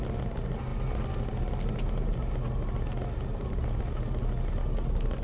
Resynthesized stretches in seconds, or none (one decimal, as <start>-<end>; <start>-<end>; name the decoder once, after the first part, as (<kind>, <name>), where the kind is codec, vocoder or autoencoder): none